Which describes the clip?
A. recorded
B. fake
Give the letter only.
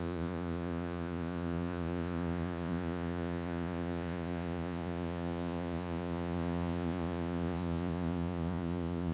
B